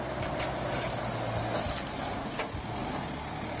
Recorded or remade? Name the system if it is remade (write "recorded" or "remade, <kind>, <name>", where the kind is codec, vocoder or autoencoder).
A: recorded